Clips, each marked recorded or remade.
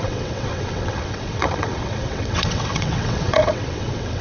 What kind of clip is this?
remade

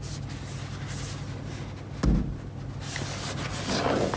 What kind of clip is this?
recorded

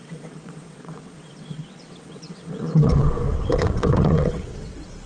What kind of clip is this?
remade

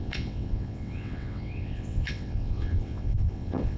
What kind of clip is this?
remade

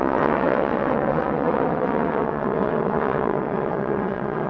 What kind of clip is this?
remade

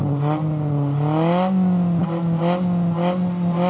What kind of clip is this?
recorded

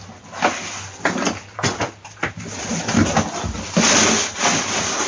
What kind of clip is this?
recorded